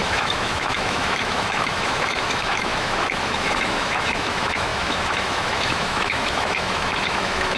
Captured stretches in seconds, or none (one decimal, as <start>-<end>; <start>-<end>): none